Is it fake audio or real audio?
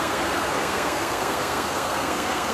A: fake